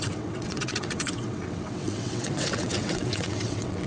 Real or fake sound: fake